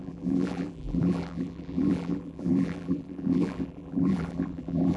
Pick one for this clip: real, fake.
fake